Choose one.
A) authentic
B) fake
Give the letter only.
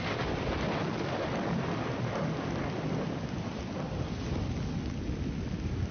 A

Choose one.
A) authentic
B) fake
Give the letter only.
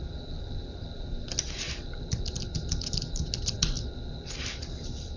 A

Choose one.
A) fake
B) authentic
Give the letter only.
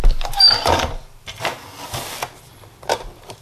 B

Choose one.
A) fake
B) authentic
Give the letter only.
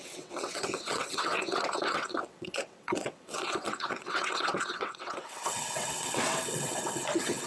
A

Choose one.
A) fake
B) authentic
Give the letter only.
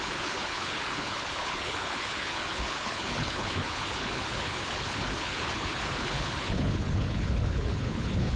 A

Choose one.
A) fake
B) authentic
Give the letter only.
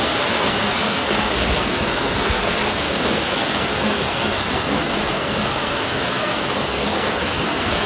A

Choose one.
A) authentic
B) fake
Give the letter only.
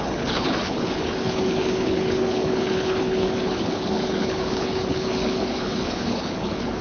B